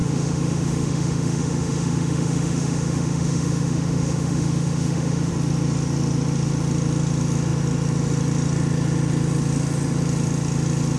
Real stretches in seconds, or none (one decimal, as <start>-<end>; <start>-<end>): 5.3-11.0